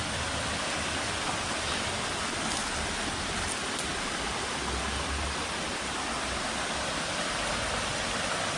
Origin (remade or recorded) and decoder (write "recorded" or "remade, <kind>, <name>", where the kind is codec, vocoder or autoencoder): recorded